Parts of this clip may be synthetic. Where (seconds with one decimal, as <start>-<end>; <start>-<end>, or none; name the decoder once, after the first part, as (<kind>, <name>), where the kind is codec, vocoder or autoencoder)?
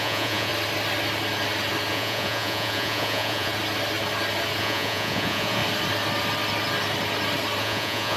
0.0-0.5 (vocoder, Vocos); 1.9-3.5; 4.6-5.6; 7.6-8.2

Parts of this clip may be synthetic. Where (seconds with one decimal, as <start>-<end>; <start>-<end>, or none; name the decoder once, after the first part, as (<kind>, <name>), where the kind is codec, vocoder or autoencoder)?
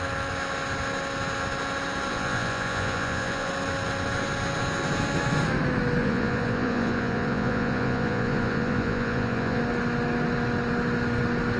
2.1-3.5 (vocoder, Vocos); 6.0-9.6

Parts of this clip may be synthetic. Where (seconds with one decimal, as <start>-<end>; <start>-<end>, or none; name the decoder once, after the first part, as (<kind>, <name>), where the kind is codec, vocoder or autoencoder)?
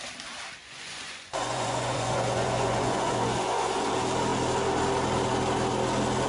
0.6-3.9 (vocoder, Vocos)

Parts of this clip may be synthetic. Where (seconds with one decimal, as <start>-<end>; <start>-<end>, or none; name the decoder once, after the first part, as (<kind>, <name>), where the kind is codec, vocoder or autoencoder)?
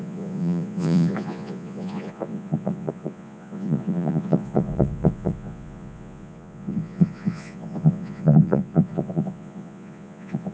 0.0-10.5 (vocoder, Vocos)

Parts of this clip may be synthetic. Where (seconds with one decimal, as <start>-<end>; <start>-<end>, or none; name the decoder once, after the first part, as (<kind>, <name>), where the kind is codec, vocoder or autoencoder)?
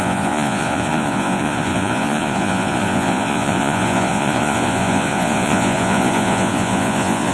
0.0-7.3 (vocoder, Vocos)